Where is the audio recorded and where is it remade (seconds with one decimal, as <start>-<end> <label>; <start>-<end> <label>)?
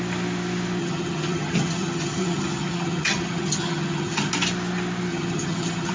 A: 0.0-0.8 recorded; 0.8-4.3 remade; 4.3-5.1 recorded; 5.1-5.9 remade